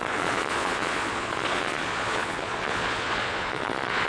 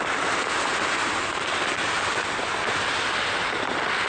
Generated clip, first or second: first